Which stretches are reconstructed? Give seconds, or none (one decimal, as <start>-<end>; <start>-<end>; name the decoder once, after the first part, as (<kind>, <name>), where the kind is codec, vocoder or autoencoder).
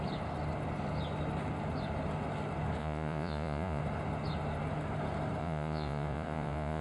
2.8-3.8 (vocoder, Vocos); 5.4-6.8